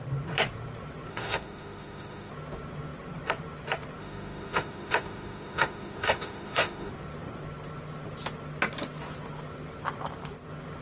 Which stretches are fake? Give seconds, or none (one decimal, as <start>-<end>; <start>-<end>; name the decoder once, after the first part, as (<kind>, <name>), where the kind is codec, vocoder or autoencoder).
1.1-2.3 (autoencoder, DAC-VAE); 4.0-6.9